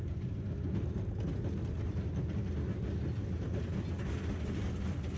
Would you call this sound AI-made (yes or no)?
no